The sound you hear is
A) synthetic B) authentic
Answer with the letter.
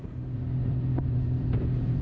A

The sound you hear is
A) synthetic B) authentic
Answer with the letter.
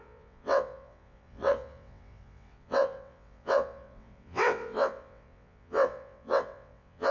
A